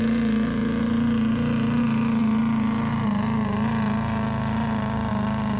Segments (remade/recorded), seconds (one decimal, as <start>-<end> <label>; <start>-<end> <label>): 0.0-5.6 recorded